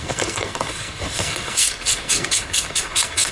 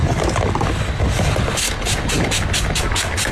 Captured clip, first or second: second